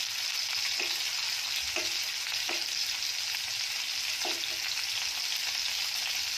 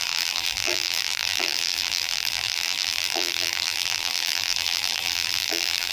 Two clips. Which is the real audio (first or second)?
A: first